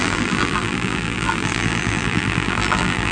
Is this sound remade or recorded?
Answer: remade